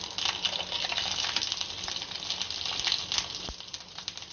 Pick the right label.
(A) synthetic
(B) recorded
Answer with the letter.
B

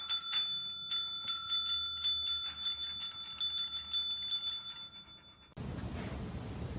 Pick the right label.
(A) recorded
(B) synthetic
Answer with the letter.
A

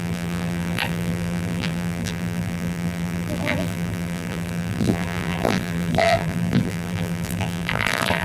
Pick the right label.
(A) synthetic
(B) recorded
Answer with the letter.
A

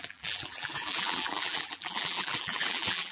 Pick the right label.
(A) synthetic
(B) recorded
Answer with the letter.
A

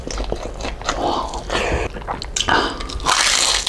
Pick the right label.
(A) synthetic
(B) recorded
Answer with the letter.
B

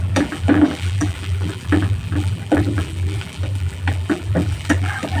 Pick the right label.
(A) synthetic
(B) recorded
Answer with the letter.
A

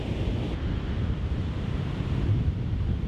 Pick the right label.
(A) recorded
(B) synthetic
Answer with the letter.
B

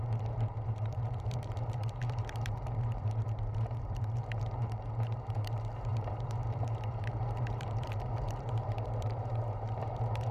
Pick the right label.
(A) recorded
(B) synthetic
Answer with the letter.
B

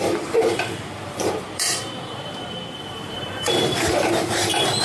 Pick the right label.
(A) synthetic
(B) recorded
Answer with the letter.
A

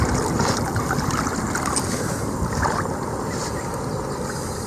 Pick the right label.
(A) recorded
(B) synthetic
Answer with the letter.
A